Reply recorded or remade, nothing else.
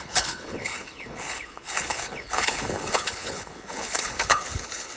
remade